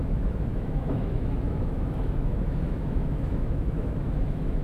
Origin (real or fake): fake